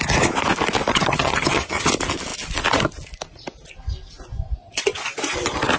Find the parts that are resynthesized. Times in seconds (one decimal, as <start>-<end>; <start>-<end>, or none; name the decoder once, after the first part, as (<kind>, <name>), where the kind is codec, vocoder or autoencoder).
0.9-1.9 (vocoder, HiFi-GAN)